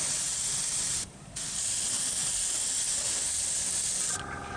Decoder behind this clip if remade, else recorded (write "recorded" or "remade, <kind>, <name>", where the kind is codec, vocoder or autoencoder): recorded